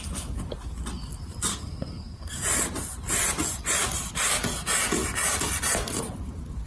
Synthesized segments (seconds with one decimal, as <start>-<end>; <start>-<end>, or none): 1.5-2.4